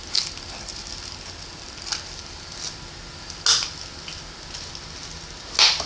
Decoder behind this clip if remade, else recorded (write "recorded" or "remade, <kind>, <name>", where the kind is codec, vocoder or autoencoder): recorded